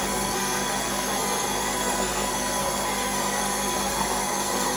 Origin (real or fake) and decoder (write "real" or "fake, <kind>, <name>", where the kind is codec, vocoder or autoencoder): fake, codec, SNAC